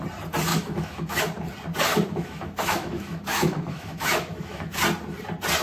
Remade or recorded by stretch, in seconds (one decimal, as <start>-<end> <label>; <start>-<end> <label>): 0.0-0.5 recorded; 0.5-1.2 remade; 1.2-1.9 recorded; 1.9-4.8 remade; 4.8-5.6 recorded